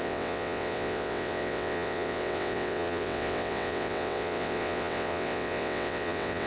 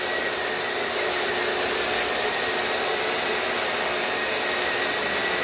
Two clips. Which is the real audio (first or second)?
second